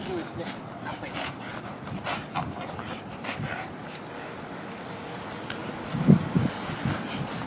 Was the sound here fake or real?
real